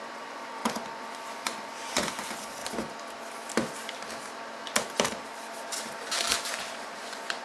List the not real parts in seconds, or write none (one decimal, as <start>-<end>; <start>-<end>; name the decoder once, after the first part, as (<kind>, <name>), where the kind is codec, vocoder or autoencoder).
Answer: 0.0-2.6 (vocoder, Vocos); 6.6-7.4